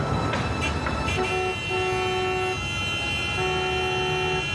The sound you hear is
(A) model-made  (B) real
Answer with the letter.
B